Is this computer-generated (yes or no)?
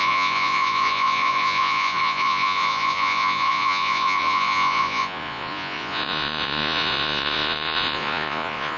yes